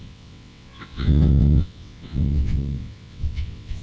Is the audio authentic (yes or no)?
no